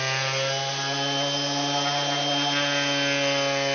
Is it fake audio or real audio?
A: real